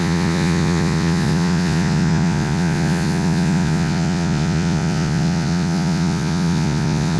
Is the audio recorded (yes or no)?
no